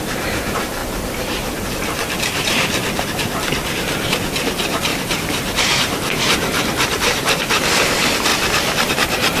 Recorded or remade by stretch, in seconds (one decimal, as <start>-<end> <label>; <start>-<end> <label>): 0.0-8.3 remade; 8.3-8.9 recorded; 8.9-9.4 remade